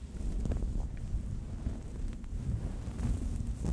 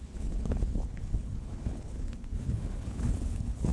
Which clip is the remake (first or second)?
second